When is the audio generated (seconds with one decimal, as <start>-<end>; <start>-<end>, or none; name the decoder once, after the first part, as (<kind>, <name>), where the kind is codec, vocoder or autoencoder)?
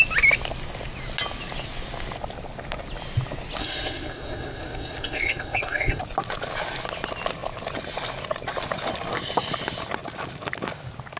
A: 3.6-6.0 (codec, SNAC)